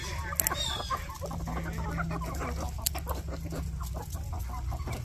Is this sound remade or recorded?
recorded